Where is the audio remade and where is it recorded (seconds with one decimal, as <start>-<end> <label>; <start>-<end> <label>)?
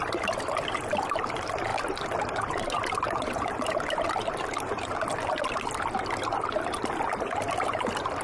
0.0-8.2 recorded